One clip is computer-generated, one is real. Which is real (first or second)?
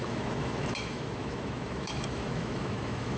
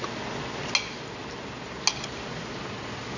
second